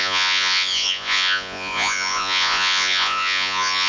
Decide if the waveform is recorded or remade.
remade